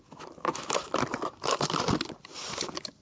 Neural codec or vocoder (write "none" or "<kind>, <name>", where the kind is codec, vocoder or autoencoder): none